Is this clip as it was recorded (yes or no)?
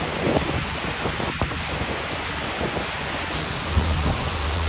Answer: no